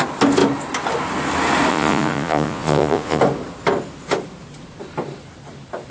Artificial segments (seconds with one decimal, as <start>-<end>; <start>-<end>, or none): 1.7-3.2